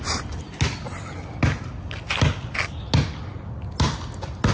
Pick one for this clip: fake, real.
real